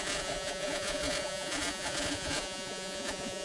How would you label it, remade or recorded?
remade